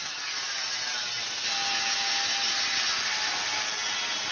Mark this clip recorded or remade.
recorded